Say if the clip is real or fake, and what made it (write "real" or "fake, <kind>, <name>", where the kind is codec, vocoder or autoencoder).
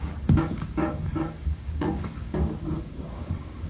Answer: fake, codec, DAC